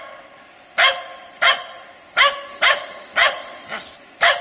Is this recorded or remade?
recorded